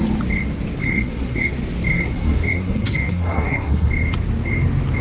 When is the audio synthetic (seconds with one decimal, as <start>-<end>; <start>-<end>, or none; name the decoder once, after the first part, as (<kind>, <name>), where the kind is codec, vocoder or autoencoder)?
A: 0.8-1.5 (codec, SNAC); 1.9-3.9